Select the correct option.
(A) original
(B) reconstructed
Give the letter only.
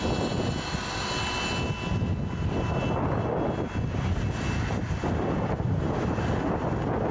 A